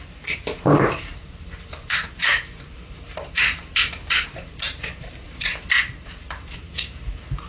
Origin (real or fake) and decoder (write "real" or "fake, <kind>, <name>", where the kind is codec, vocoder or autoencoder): fake, vocoder, BigVGAN v2